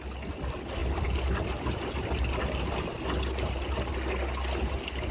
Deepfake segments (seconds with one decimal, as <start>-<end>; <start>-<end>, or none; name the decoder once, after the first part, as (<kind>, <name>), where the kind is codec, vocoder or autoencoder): 0.8-1.8 (vocoder, BigVGAN v2)